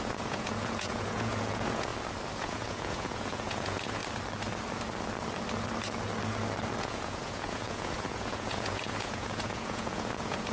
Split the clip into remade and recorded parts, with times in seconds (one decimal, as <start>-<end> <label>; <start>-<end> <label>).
0.0-1.9 remade; 1.9-2.4 recorded; 2.4-4.0 remade; 4.0-6.8 recorded; 6.8-10.5 remade